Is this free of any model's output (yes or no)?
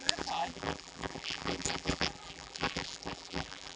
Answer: no